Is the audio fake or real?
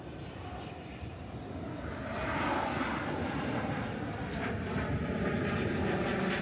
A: real